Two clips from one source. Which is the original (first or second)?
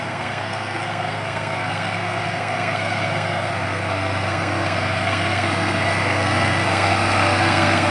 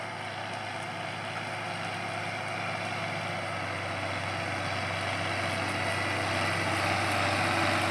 second